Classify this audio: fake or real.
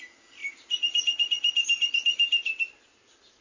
real